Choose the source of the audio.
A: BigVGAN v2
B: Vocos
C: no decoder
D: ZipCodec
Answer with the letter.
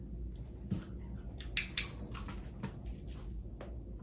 C